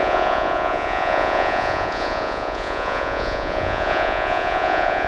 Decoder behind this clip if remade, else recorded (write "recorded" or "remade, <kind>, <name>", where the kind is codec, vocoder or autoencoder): remade, vocoder, Vocos